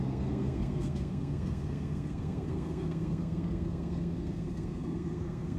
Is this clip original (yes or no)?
no